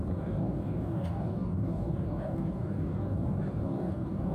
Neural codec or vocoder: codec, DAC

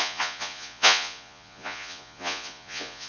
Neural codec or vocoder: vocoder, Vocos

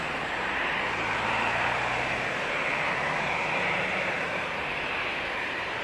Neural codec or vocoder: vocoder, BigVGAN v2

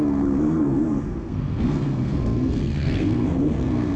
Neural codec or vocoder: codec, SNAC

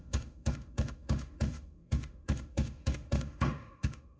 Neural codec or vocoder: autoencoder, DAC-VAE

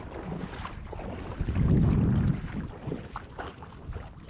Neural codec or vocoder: none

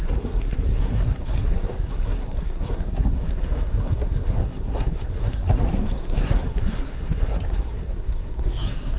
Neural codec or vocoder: codec, SNAC